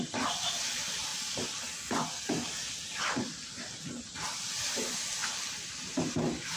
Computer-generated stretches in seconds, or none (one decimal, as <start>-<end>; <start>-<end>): 0.0-1.1; 4.6-6.6